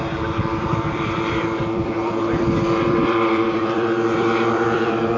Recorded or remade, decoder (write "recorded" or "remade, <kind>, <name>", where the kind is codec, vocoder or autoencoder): remade, vocoder, BigVGAN v2